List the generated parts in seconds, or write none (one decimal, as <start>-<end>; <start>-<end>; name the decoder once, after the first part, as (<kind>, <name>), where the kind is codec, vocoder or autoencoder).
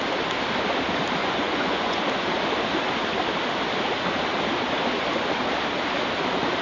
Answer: 1.2-2.0 (vocoder, Vocos)